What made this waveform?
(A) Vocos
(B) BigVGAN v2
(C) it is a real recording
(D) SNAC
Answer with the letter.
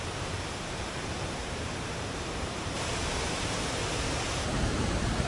B